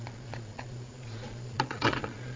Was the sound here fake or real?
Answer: fake